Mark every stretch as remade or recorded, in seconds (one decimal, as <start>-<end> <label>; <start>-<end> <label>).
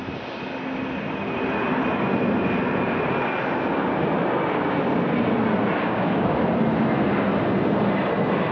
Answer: 0.0-5.8 recorded; 5.8-6.4 remade; 6.4-8.5 recorded